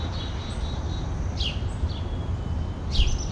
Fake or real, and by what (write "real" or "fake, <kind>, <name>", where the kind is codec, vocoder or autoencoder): real